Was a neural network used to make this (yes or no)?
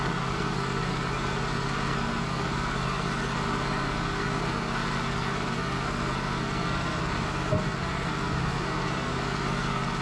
yes